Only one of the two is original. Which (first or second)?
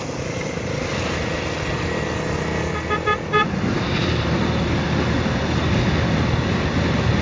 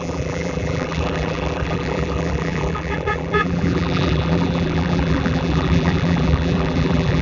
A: first